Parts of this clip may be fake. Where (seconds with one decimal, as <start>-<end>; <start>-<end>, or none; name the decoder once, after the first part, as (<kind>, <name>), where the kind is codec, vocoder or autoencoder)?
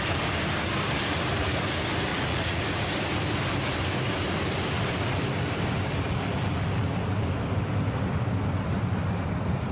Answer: 2.1-2.6 (vocoder, Vocos)